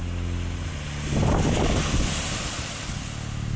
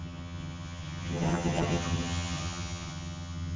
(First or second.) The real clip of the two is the first